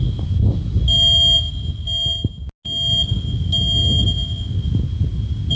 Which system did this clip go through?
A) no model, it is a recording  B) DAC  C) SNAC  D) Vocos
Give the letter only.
A